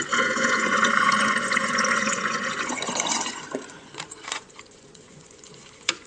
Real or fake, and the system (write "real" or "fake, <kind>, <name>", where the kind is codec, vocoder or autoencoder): fake, vocoder, Vocos